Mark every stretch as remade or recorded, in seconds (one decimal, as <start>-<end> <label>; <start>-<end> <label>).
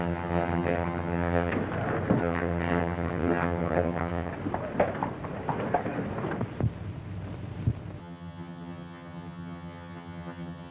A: 0.0-1.5 remade; 1.5-2.2 recorded; 2.2-4.3 remade; 4.3-8.0 recorded; 8.0-10.7 remade